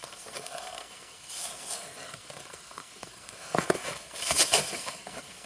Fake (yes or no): yes